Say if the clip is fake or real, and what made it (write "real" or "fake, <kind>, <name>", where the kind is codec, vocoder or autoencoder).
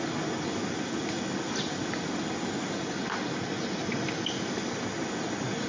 real